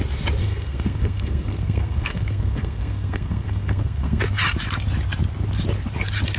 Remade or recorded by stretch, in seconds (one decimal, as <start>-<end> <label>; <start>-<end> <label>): 0.0-0.4 recorded; 0.4-4.2 remade; 4.2-6.4 recorded